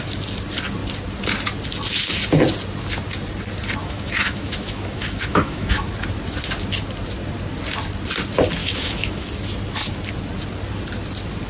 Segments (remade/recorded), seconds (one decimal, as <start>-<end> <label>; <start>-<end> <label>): 0.0-3.8 recorded; 3.8-5.9 remade; 5.9-8.6 recorded; 8.6-9.3 remade; 9.3-11.5 recorded

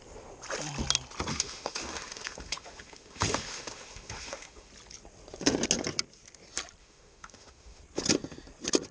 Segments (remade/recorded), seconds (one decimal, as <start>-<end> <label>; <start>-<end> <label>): 0.0-1.3 recorded; 1.3-4.7 remade; 4.7-6.8 recorded; 6.8-7.8 remade; 7.8-8.9 recorded

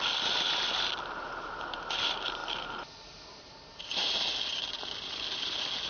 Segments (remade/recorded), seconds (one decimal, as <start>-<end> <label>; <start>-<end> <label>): 0.0-5.9 recorded

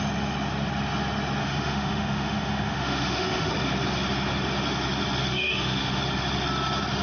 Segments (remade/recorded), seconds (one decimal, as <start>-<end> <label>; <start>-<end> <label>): 0.0-1.4 recorded; 1.4-3.5 remade; 3.5-5.3 recorded; 5.3-6.0 remade; 6.0-7.0 recorded